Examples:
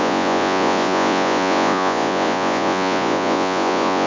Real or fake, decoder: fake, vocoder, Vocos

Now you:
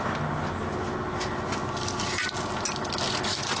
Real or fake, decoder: real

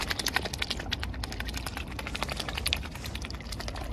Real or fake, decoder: real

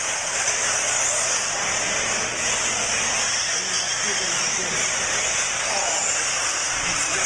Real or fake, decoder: real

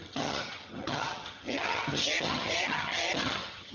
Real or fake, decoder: fake, vocoder, HiFi-GAN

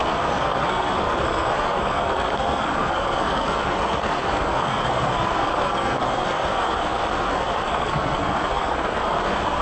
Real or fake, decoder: fake, codec, SNAC